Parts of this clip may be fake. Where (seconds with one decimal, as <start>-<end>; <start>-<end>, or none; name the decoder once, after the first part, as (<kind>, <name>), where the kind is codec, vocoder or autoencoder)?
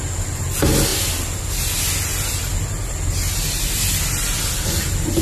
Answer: none